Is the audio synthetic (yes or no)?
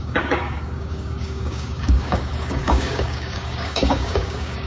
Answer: yes